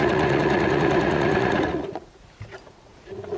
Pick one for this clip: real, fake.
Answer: fake